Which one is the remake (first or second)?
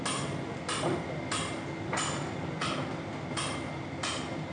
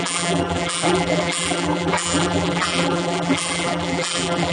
second